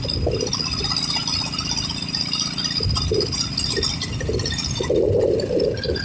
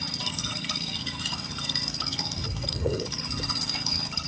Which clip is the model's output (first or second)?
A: second